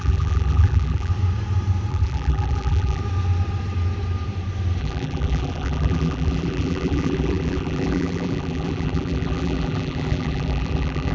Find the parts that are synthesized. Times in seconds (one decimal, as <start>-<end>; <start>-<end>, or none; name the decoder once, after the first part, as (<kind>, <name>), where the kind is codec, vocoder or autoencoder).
0.0-1.1 (vocoder, BigVGAN v2); 1.9-3.0; 4.8-11.1

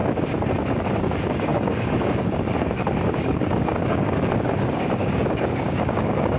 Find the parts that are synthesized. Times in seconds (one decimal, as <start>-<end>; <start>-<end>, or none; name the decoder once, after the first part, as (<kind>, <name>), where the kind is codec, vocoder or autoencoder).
1.0-6.4 (codec, DAC)

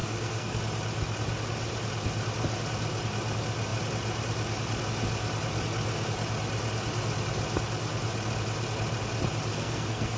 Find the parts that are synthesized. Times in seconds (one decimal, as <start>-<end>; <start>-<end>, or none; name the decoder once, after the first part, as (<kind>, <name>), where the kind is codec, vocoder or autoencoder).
0.0-0.6 (codec, SNAC); 9.5-10.2

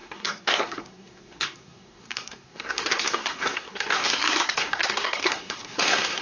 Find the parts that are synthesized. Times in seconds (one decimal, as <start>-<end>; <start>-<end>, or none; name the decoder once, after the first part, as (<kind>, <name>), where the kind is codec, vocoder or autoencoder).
0.0-6.2 (codec, SNAC)